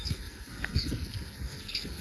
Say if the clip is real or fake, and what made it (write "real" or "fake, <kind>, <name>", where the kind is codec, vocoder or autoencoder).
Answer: fake, codec, SNAC